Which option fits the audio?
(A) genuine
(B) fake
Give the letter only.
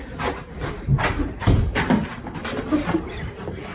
B